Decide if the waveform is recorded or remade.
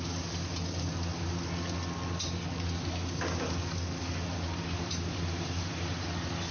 recorded